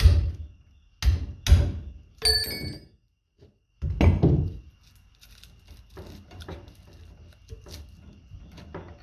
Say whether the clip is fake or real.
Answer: real